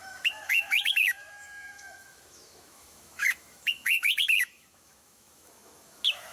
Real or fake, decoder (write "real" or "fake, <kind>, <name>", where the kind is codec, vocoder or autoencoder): fake, autoencoder, DAC-VAE